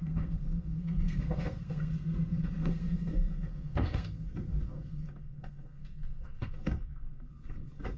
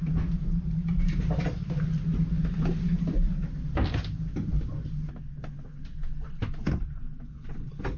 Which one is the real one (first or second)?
second